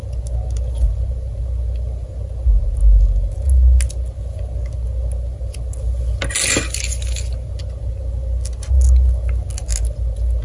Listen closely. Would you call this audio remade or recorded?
recorded